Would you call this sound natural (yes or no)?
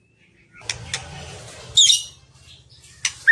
yes